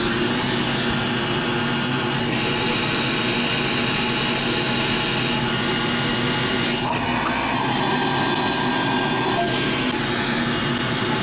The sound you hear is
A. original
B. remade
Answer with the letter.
A